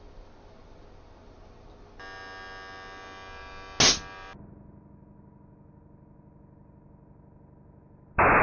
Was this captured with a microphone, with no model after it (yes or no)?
yes